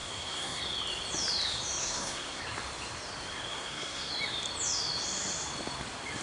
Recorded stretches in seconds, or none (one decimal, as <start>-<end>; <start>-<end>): 0.6-1.8; 2.4-3.5; 4.1-6.2